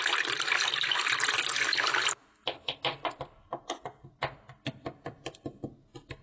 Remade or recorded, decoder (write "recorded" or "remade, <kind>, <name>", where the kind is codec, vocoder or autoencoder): recorded